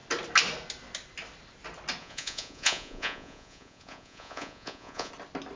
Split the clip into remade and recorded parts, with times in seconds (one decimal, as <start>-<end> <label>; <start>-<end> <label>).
0.0-2.0 recorded; 2.0-5.1 remade; 5.1-5.6 recorded